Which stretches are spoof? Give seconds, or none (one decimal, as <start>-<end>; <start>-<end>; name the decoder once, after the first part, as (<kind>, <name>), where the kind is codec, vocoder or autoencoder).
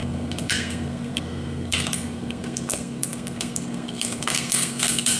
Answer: 0.0-5.2 (codec, SNAC)